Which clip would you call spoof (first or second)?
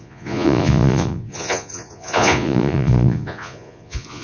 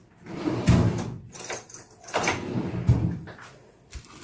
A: first